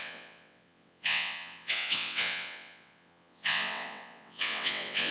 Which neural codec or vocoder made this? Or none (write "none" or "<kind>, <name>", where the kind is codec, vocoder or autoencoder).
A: vocoder, WaveNeXt